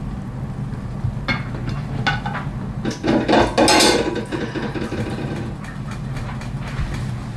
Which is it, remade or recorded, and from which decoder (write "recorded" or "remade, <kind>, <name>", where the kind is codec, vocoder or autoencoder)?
recorded